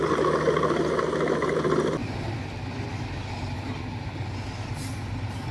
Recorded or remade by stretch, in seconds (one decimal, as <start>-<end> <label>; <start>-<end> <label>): 0.0-5.5 recorded